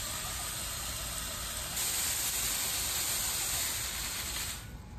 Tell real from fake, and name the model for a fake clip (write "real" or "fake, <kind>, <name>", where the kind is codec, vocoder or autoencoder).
real